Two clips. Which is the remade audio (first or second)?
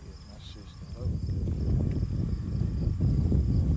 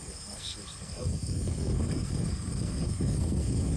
second